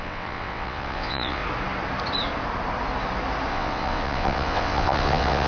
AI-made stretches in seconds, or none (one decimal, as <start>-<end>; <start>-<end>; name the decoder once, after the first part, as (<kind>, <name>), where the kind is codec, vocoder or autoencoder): 0.0-1.4 (vocoder, WaveNeXt); 3.5-5.5